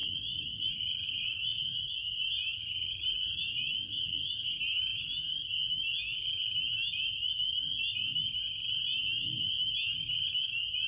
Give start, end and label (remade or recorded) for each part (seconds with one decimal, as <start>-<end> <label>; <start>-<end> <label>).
0.0-4.5 remade; 4.5-10.9 recorded